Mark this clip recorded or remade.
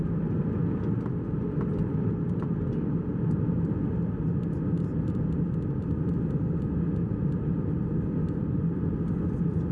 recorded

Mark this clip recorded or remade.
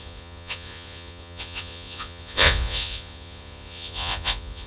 remade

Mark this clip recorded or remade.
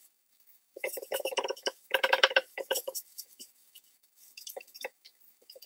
remade